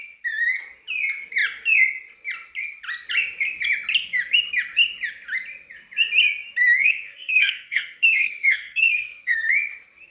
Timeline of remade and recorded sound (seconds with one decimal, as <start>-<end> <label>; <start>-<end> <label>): 0.0-6.8 recorded; 6.8-9.5 remade; 9.5-10.1 recorded